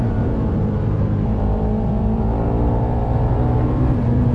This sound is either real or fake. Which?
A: fake